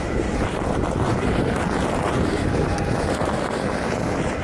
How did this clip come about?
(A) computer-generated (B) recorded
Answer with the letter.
B